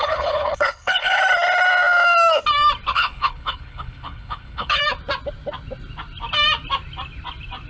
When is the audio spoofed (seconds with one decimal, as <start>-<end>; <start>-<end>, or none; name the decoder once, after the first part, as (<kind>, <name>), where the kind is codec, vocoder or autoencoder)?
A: 0.0-1.2 (codec, HILCodec); 2.9-4.8